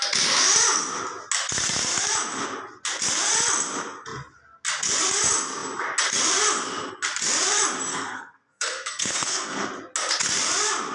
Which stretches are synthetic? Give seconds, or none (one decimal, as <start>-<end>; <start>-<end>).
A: 7.9-9.7